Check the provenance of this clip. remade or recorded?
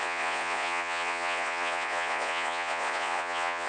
remade